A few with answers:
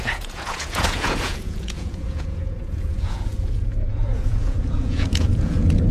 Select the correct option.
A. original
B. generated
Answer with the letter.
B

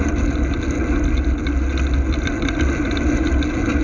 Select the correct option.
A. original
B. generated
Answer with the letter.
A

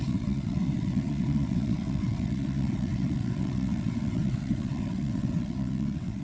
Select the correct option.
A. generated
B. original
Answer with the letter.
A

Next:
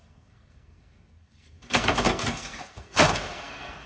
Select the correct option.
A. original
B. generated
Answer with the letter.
B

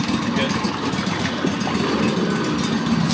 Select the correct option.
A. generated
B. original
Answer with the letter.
B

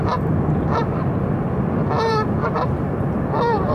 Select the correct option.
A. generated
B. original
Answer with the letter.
A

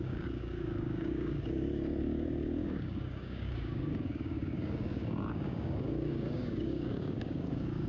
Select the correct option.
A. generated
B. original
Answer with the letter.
A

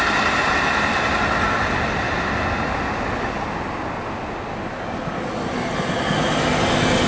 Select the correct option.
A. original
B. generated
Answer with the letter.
A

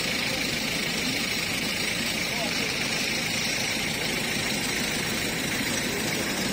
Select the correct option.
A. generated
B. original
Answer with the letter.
A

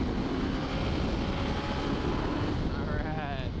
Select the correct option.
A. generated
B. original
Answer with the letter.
B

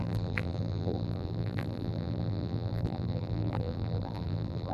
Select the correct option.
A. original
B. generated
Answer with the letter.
B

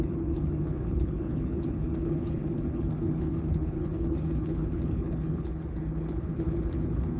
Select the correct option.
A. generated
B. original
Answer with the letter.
A